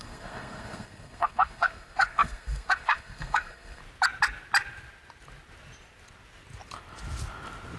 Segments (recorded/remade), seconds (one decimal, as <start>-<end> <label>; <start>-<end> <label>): 0.0-3.8 remade; 3.8-7.8 recorded